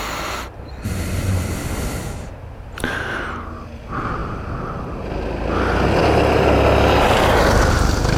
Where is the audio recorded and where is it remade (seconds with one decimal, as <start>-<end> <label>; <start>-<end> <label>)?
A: 0.0-8.2 recorded

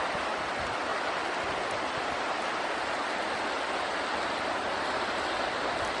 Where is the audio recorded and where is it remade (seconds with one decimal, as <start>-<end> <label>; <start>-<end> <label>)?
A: 0.0-6.0 recorded